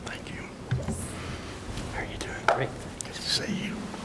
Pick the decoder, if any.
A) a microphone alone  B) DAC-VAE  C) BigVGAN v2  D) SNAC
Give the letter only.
A